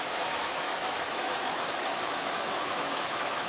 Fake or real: fake